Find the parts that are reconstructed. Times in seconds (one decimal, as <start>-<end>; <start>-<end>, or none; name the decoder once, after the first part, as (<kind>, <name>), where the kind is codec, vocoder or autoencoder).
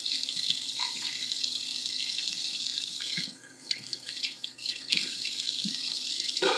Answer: 0.0-6.6 (codec, SNAC)